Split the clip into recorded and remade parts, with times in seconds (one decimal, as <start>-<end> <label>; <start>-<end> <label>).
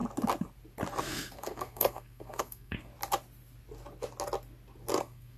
0.0-1.0 recorded; 1.0-2.9 remade; 2.9-5.0 recorded; 5.0-5.4 remade